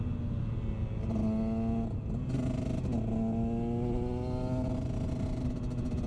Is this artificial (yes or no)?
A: no